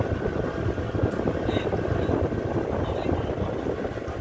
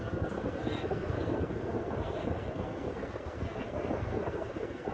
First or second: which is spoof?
second